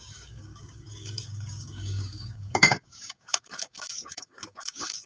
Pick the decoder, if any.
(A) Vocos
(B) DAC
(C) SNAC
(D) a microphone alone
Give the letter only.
B